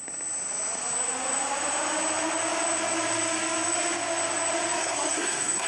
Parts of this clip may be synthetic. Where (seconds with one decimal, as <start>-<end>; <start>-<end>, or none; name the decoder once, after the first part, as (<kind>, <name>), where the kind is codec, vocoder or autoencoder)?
4.8-5.7 (codec, SNAC)